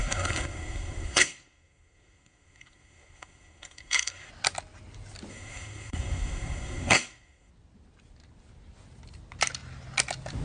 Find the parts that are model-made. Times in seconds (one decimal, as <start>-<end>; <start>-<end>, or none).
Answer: 0.0-4.3; 5.3-7.5